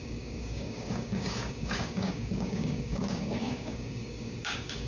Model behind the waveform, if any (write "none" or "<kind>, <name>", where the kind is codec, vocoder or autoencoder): codec, DAC